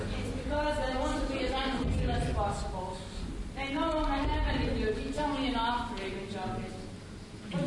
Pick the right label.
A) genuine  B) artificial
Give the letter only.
A